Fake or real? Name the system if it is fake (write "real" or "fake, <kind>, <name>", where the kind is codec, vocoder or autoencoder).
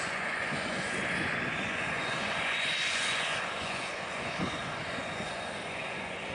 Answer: fake, vocoder, Vocos